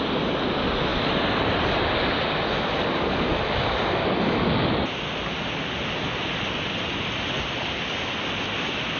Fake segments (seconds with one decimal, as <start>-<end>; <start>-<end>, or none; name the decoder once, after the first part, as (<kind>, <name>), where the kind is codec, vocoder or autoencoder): none